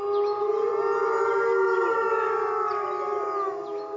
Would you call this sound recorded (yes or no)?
yes